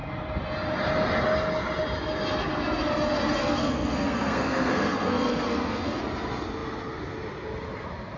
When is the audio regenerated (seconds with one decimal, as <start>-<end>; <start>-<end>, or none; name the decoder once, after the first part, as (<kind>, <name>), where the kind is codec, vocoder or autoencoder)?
3.4-6.0 (codec, SNAC)

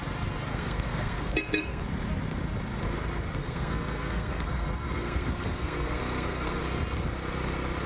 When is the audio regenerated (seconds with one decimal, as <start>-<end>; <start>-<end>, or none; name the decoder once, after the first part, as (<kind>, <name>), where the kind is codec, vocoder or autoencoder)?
0.5-1.8 (codec, SNAC); 3.4-6.6

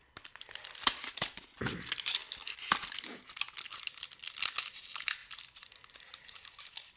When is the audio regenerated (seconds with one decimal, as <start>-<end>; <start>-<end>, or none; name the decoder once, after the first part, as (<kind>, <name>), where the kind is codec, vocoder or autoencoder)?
none

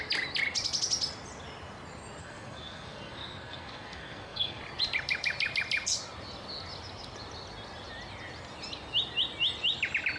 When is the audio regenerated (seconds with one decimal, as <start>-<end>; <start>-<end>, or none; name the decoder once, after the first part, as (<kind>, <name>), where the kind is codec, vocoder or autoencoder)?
2.2-4.6 (codec, SNAC)